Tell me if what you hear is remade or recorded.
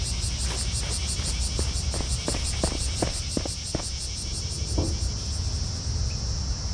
recorded